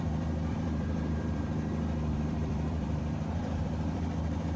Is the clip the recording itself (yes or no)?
no